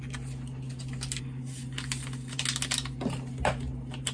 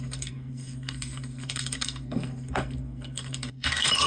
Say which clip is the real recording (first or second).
first